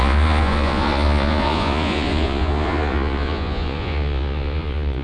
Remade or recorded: remade